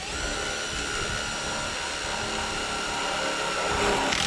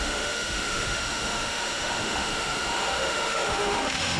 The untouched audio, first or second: first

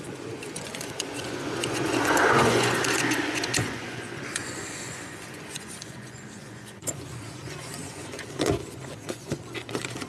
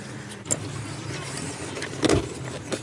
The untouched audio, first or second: second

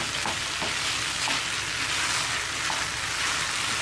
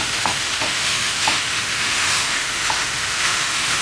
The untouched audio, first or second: first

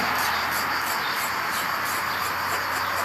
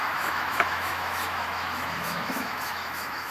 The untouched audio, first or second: first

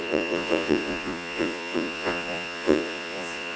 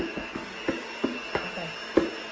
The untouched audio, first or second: second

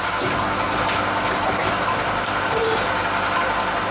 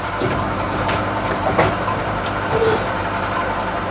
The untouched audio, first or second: first